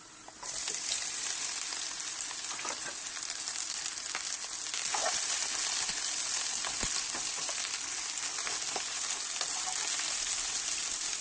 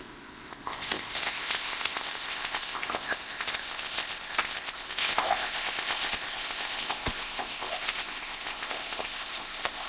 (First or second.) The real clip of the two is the first